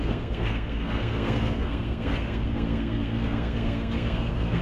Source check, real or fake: fake